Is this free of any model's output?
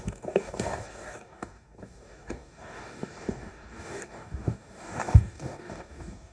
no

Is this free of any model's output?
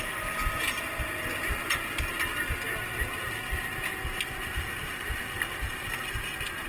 yes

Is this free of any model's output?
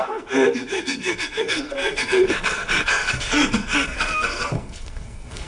no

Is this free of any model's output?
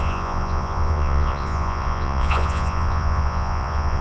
no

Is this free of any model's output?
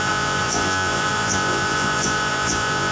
no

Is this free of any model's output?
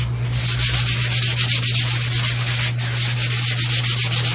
yes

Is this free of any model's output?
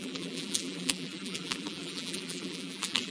no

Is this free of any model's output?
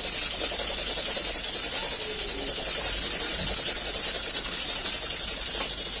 yes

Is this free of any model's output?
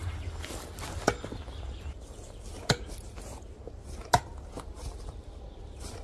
yes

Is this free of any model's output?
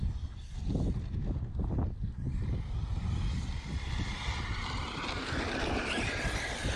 yes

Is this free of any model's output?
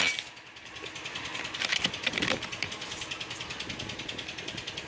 yes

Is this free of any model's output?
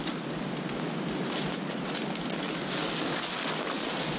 yes